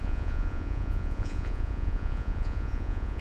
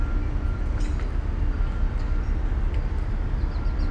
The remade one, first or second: first